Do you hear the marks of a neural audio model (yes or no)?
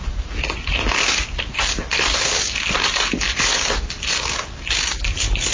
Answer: no